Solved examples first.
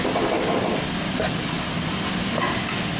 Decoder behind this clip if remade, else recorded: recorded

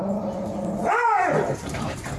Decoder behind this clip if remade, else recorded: recorded